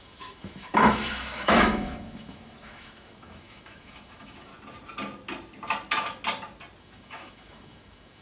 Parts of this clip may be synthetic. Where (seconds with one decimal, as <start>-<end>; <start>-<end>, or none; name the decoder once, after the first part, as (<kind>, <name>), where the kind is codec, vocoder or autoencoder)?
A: 0.0-4.5 (autoencoder, DAC-VAE); 6.8-8.2